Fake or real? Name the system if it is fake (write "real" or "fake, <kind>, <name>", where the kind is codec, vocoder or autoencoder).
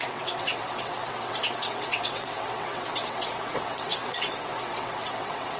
fake, vocoder, WaveNeXt